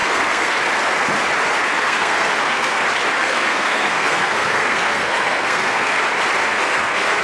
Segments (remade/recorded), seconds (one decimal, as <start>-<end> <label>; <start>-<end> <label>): 0.0-0.6 remade; 0.6-1.7 recorded; 1.7-2.8 remade; 2.8-3.2 recorded; 3.2-6.0 remade; 6.0-6.4 recorded; 6.4-7.2 remade

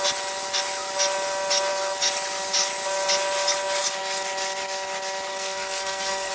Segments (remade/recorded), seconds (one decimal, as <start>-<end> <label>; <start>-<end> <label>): 0.0-5.3 recorded; 5.3-6.3 remade

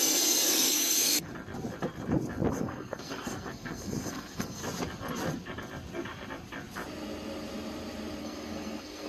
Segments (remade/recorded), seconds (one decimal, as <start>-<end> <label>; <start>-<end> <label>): 0.0-1.3 remade; 1.3-2.6 recorded; 2.6-4.6 remade; 4.6-8.2 recorded; 8.2-9.1 remade

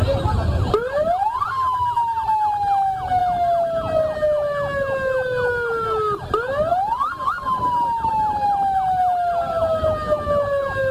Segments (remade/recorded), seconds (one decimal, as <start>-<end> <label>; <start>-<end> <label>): 0.0-10.9 recorded

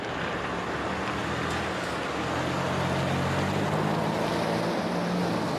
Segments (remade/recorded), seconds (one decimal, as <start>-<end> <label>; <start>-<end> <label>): 0.0-5.6 recorded

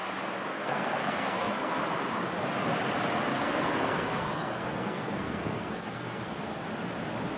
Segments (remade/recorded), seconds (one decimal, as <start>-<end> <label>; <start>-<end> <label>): 0.0-0.5 recorded; 0.5-1.8 remade; 1.8-3.3 recorded; 3.3-6.6 remade; 6.6-7.4 recorded

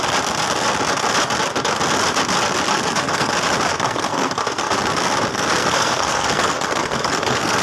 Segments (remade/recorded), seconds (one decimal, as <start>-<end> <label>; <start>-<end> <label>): 0.0-2.7 recorded; 2.7-3.3 remade; 3.3-3.7 recorded; 3.7-4.7 remade; 4.7-5.3 recorded; 5.3-7.6 remade